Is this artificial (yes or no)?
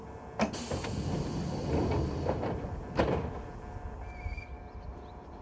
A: no